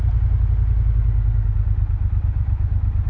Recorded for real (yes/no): yes